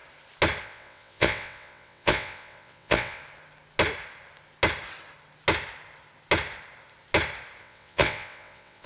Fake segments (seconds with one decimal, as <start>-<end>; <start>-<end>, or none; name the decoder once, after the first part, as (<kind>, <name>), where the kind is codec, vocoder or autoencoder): 0.6-3.2 (vocoder, WaveNeXt); 7.6-8.9